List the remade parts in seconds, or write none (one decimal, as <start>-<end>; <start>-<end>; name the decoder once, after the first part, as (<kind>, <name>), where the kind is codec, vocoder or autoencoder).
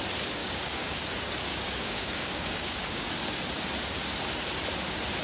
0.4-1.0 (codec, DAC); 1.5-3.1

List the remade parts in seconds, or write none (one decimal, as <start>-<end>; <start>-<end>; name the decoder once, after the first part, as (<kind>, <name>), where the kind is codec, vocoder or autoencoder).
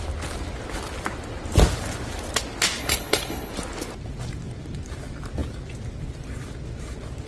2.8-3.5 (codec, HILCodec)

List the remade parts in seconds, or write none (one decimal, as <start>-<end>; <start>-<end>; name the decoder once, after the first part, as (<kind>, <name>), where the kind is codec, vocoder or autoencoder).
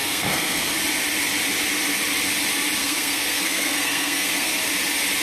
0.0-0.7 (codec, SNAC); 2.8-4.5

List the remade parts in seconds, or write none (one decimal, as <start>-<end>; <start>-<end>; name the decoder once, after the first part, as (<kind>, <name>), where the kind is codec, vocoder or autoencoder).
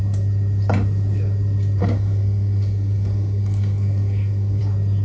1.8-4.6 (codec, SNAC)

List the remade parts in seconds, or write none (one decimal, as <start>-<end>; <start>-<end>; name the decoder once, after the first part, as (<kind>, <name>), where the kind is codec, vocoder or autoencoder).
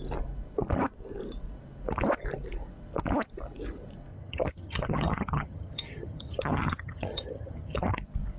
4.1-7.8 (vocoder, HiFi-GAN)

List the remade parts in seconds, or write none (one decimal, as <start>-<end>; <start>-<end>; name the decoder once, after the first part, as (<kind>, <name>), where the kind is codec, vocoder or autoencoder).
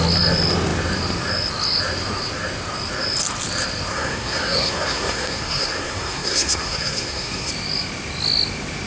3.9-7.5 (codec, SNAC)